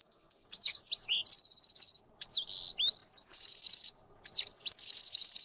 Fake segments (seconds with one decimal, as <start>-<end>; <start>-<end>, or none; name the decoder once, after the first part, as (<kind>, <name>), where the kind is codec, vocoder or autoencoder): 0.0-0.8 (codec, SNAC)